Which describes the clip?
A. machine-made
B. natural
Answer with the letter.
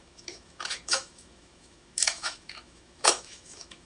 A